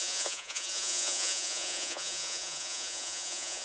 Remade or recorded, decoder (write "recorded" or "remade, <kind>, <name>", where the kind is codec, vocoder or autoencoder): remade, vocoder, Vocos